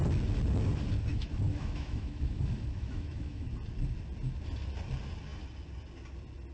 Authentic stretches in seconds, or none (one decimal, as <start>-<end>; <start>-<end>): 0.0-1.1; 3.5-6.5